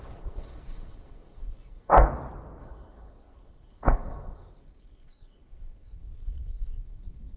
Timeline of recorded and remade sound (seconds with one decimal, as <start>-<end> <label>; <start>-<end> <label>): 0.0-2.1 remade; 2.1-2.6 recorded; 2.6-7.4 remade